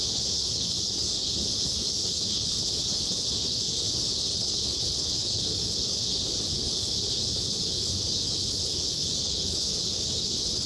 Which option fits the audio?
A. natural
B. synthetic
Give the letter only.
B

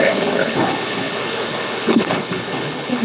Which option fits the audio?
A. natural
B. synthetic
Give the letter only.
B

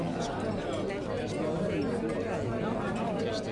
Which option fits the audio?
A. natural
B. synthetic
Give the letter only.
A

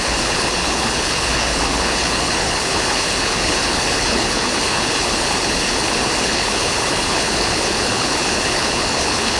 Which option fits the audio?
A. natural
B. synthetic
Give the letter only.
B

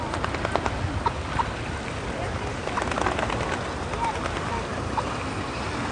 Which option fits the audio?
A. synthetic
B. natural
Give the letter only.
B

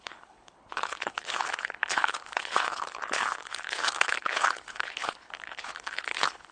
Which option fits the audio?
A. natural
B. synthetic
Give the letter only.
B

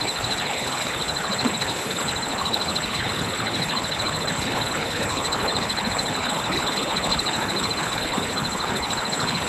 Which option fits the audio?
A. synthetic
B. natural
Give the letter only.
A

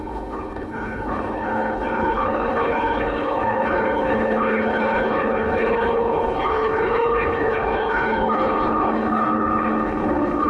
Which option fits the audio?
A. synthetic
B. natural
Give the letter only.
A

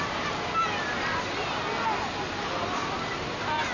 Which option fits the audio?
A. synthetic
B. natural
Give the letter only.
B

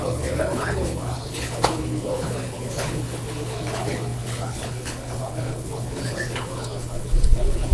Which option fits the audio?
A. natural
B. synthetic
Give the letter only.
B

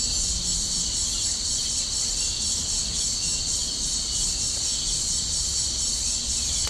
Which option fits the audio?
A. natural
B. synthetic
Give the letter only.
A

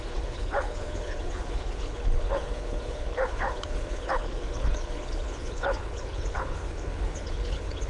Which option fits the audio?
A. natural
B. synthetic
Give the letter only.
B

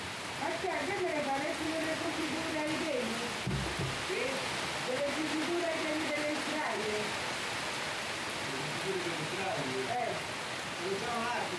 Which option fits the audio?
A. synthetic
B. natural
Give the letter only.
B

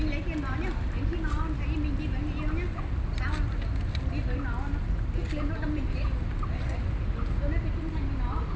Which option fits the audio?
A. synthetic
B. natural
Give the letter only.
B